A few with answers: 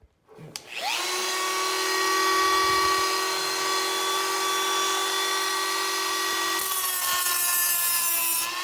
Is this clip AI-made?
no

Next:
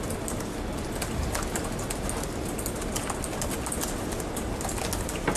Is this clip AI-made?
no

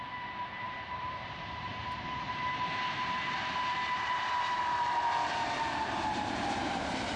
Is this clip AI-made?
yes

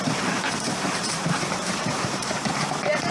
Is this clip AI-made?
yes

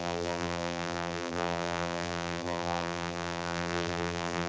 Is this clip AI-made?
yes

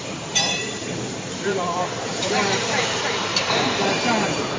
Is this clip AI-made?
yes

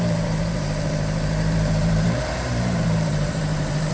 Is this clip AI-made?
yes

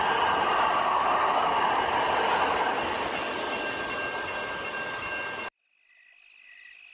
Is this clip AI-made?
no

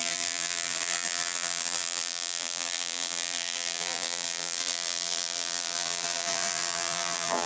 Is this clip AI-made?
yes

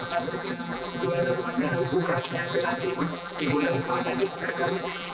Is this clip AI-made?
yes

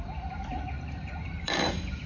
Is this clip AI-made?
yes